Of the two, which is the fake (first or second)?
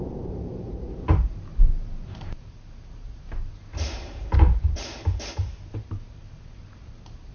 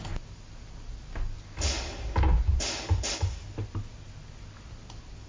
first